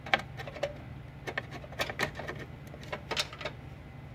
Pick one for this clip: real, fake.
real